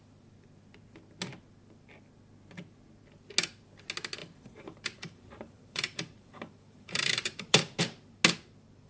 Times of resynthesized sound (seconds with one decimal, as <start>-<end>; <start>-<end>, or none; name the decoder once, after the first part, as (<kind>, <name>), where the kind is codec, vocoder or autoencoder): 4.2-7.8 (vocoder, BigVGAN v2)